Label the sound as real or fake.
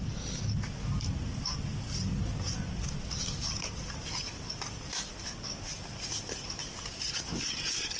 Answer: real